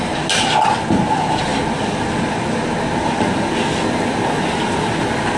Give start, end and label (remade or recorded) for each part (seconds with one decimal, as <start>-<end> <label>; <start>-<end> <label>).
0.0-5.4 recorded